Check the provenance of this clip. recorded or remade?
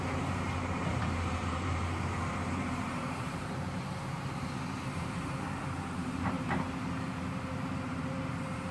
remade